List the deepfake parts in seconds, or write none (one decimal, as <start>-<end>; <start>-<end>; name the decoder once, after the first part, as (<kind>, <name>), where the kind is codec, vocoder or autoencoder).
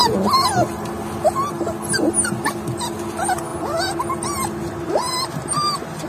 none